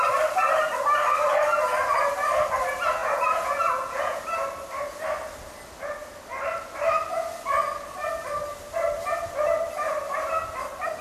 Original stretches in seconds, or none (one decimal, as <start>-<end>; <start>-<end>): 0.0-3.0; 4.2-11.0